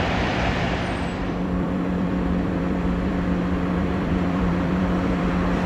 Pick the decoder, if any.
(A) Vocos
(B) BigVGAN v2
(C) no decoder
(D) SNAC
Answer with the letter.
B